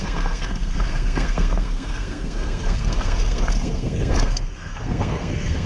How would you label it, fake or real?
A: fake